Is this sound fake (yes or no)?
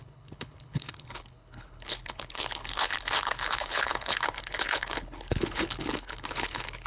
yes